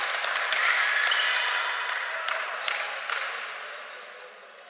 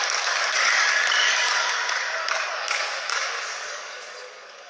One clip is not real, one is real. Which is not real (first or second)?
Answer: second